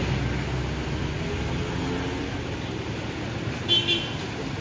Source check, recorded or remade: recorded